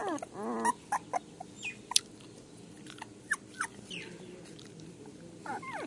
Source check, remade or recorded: recorded